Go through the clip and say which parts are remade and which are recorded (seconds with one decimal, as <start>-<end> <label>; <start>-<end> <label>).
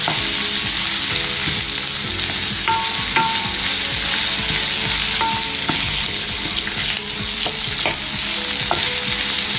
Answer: 0.0-5.6 recorded; 5.6-6.9 remade; 6.9-9.6 recorded